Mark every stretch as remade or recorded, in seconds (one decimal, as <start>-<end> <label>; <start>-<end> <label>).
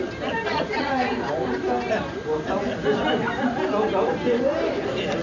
0.0-0.5 recorded; 0.5-1.1 remade; 1.1-5.2 recorded